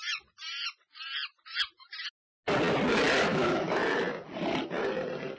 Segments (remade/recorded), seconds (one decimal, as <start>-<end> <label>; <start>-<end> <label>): 0.0-3.2 recorded; 3.2-3.8 remade; 3.8-5.4 recorded